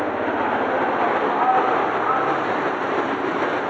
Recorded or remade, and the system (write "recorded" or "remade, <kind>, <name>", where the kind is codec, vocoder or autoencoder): recorded